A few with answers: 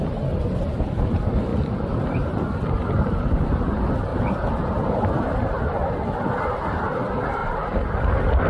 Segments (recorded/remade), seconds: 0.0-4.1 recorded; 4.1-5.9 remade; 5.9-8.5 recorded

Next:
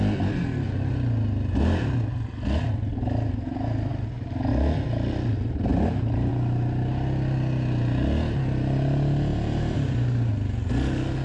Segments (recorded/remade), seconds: 0.0-5.7 recorded; 5.7-6.3 remade; 6.3-9.3 recorded; 9.3-10.3 remade; 10.3-11.2 recorded

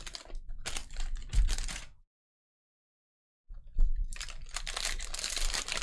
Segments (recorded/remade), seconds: 0.0-2.8 recorded; 2.8-5.8 remade

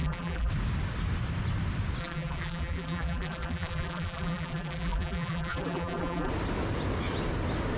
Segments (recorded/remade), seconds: 0.0-0.5 remade; 0.5-2.0 recorded; 2.0-6.3 remade; 6.3-7.8 recorded

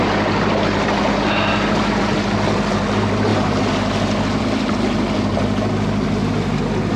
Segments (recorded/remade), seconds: 0.0-7.0 recorded

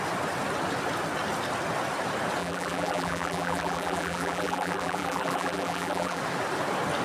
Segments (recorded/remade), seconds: 0.0-2.4 recorded; 2.4-6.2 remade; 6.2-7.0 recorded

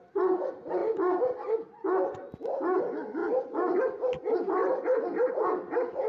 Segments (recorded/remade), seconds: 0.0-0.8 remade; 0.8-2.8 recorded; 2.8-3.2 remade; 3.2-3.7 recorded; 3.7-6.1 remade